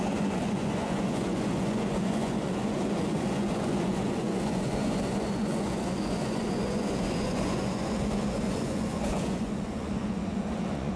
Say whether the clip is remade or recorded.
remade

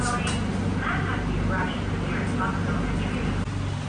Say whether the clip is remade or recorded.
recorded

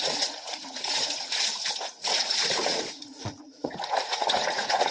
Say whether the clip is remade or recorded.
remade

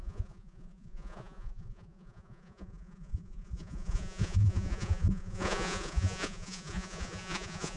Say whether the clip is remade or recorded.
remade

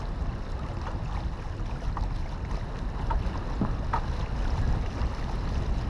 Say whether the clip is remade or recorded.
recorded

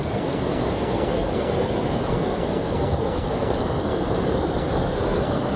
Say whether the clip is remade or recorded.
remade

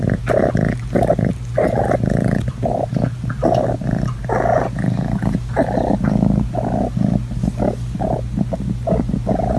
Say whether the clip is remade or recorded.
recorded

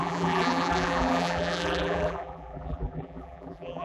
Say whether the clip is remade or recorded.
remade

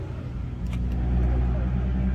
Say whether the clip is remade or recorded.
recorded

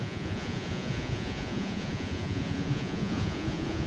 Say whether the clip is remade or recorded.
remade